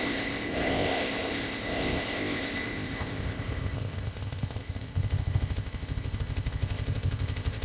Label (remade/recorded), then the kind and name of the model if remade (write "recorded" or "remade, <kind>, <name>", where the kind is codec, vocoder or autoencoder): remade, codec, ZipCodec